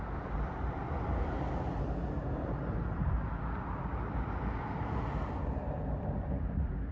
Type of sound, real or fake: real